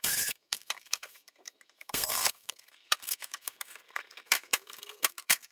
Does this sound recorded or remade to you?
remade